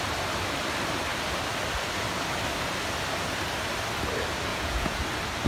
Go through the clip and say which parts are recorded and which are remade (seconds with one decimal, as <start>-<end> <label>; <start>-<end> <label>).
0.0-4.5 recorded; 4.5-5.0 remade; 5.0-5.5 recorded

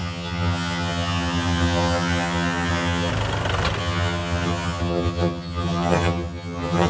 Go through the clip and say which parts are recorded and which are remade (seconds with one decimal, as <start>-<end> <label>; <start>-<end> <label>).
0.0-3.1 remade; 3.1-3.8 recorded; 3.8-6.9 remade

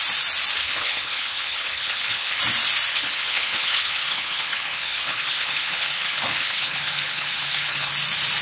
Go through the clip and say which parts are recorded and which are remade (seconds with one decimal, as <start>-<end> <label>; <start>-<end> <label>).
0.0-0.6 recorded; 0.6-2.4 remade; 2.4-2.9 recorded; 2.9-7.9 remade; 7.9-8.4 recorded